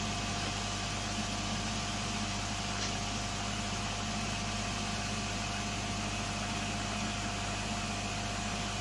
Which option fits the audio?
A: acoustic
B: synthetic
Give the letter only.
A